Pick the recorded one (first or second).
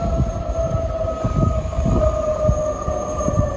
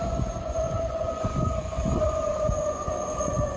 first